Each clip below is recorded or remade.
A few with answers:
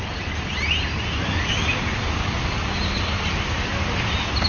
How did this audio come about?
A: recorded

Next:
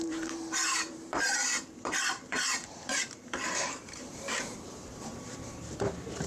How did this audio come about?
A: remade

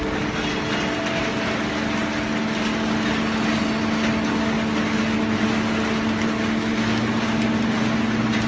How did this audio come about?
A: recorded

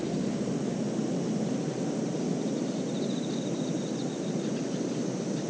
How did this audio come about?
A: recorded